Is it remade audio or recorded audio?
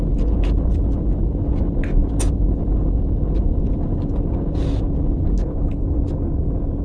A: recorded